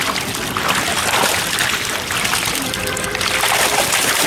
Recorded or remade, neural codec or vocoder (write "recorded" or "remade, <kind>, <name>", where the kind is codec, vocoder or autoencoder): recorded